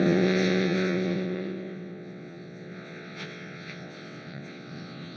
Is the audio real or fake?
fake